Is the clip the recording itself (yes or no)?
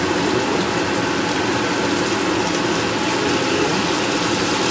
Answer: yes